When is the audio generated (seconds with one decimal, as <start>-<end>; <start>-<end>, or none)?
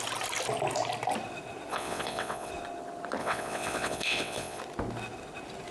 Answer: 1.7-2.5; 3.2-4.6